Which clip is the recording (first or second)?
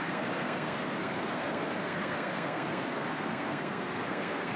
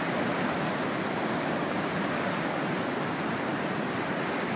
second